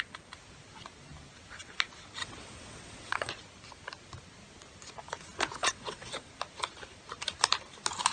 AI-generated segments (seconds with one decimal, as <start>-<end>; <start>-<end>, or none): 2.2-3.3; 5.6-6.3